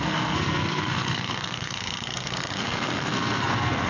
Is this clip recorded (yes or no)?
no